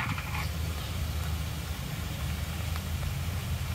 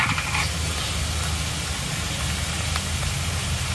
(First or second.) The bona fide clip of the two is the second